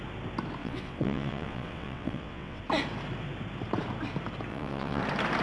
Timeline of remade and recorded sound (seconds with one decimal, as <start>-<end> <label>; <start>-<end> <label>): 0.0-0.6 recorded; 0.6-2.6 remade; 2.6-4.5 recorded; 4.5-5.0 remade; 5.0-5.4 recorded